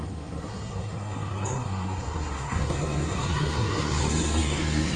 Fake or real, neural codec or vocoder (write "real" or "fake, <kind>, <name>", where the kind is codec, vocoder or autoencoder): fake, codec, SNAC